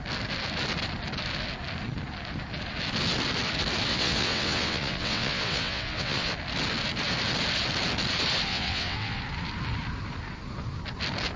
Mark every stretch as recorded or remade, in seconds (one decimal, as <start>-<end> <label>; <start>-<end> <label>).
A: 0.0-3.9 recorded; 3.9-6.3 remade; 6.3-8.5 recorded; 8.5-9.2 remade; 9.2-11.4 recorded